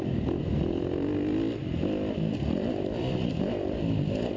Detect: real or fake fake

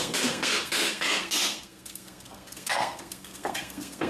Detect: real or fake fake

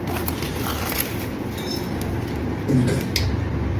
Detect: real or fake real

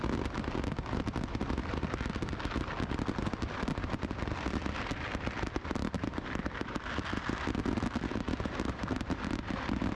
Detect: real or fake real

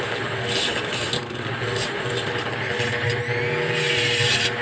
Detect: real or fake real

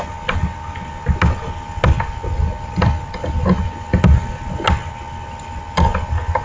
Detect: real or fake real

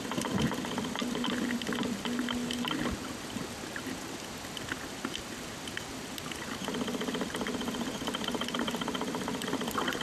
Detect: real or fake real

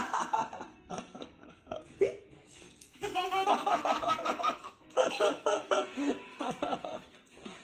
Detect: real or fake fake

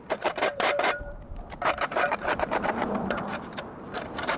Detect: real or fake fake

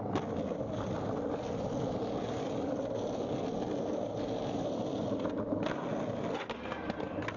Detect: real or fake real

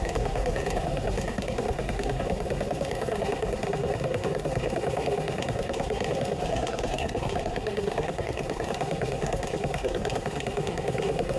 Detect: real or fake fake